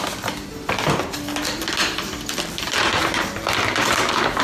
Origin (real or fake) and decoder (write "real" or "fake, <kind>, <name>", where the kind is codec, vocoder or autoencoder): real